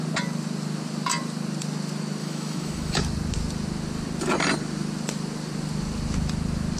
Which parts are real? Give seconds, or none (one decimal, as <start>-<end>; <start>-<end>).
0.0-2.2; 3.0-6.8